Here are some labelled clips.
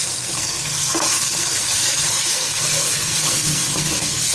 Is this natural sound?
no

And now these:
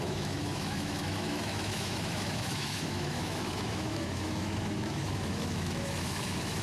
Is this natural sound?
no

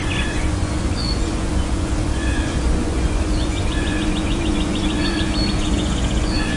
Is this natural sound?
no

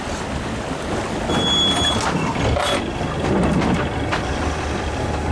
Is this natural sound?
yes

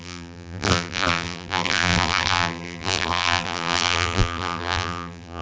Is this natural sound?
no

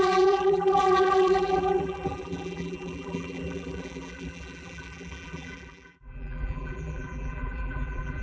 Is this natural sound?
no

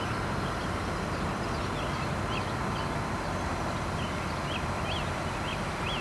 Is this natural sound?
yes